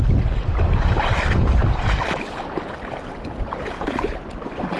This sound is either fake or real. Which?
real